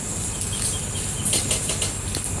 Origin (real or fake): real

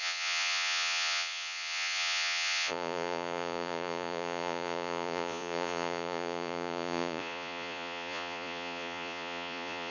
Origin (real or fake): fake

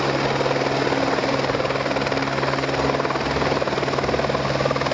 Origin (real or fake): real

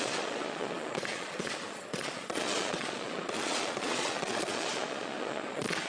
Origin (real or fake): fake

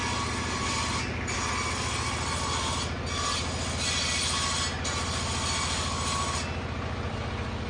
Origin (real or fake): real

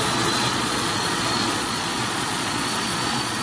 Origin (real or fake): fake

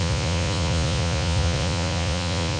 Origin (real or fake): fake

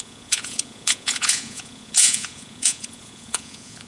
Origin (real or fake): fake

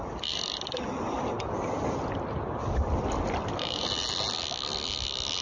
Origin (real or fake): real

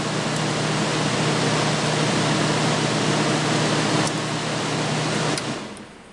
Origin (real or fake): real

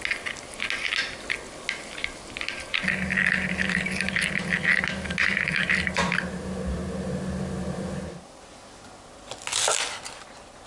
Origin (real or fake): real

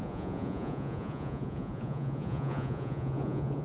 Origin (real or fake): fake